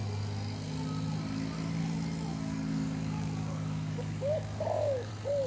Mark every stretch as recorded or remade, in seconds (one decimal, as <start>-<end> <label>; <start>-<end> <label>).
0.0-2.3 recorded; 2.3-5.1 remade; 5.1-5.5 recorded